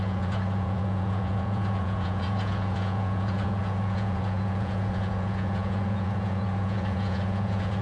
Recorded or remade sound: remade